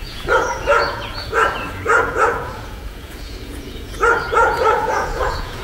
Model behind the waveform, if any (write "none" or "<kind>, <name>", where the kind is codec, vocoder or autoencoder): vocoder, Vocos